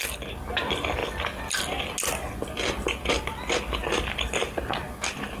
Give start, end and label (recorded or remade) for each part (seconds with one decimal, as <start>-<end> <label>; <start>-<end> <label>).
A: 0.0-5.4 recorded